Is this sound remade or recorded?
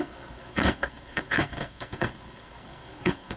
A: remade